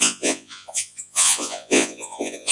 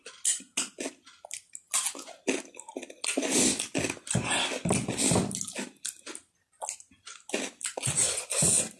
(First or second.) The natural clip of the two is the second